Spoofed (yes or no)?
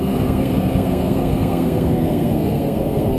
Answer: yes